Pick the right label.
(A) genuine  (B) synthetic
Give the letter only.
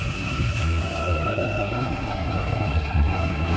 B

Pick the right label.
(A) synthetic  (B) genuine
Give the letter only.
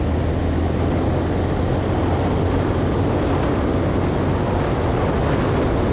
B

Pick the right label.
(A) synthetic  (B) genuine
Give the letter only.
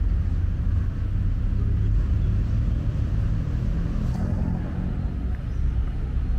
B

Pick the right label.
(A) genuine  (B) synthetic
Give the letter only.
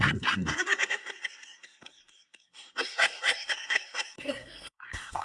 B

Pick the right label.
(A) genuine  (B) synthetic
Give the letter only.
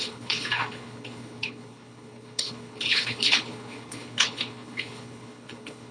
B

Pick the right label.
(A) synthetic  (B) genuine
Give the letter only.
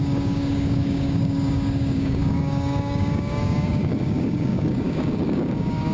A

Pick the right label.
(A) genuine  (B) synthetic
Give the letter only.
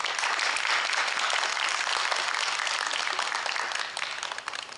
A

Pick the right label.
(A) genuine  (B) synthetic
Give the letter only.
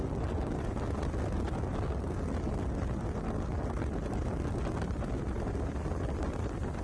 A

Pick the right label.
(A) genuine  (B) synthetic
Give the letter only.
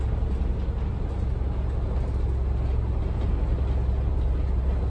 A